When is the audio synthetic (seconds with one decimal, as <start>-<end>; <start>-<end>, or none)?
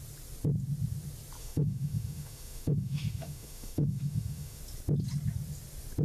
1.4-4.6